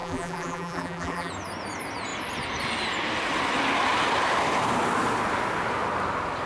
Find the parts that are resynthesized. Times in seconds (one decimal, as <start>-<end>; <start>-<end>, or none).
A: 0.0-1.3